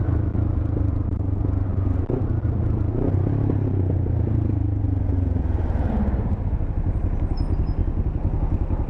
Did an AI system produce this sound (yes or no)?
no